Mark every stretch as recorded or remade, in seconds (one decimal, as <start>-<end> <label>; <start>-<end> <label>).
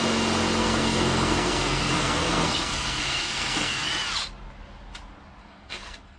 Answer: 0.0-0.6 recorded; 0.6-3.9 remade; 3.9-5.4 recorded; 5.4-6.2 remade